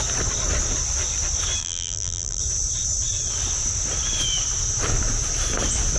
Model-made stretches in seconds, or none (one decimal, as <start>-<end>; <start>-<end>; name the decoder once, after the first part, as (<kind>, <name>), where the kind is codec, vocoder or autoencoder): 1.6-2.4 (vocoder, BigVGAN v2)